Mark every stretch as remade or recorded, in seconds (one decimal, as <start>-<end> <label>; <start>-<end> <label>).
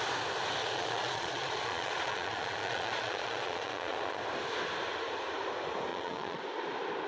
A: 0.0-0.6 recorded; 0.6-4.2 remade; 4.2-5.9 recorded; 5.9-6.4 remade; 6.4-7.1 recorded